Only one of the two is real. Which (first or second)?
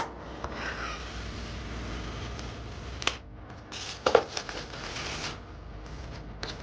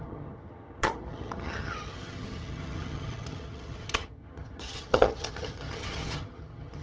first